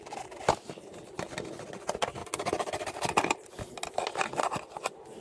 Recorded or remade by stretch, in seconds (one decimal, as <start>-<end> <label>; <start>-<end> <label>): 0.0-5.2 recorded